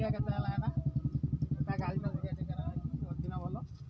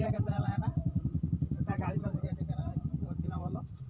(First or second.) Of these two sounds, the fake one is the second